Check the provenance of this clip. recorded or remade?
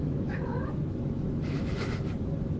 remade